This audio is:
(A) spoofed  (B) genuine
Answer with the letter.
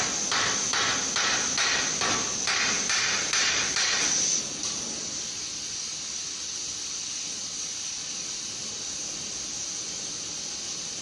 B